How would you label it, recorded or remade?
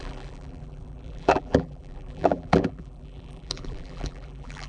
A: remade